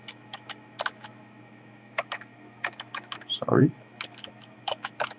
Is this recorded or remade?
remade